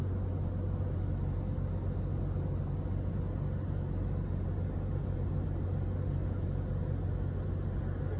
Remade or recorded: recorded